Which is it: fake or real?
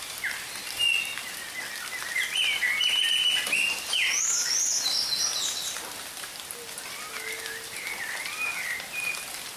real